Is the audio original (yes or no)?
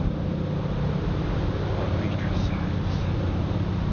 yes